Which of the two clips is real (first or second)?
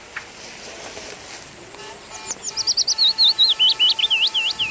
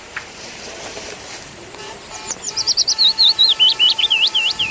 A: first